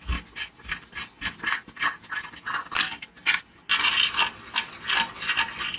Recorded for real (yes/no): yes